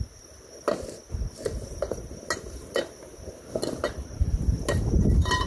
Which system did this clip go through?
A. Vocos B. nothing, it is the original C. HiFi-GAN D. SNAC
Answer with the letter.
B